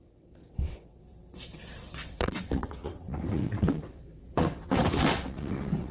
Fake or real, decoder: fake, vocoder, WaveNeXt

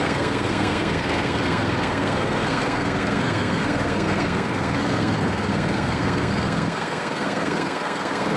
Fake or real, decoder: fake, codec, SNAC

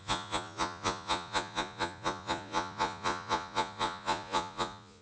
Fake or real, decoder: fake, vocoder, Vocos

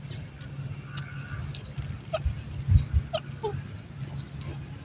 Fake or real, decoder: real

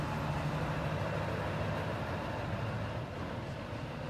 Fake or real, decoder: real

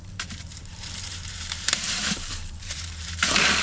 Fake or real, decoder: fake, vocoder, BigVGAN v2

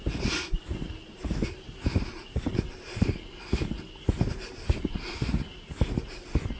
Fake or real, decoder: real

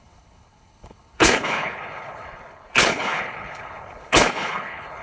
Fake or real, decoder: fake, codec, HILCodec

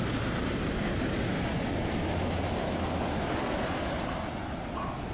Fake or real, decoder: real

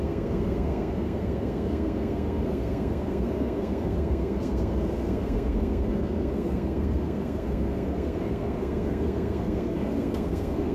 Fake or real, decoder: fake, codec, SNAC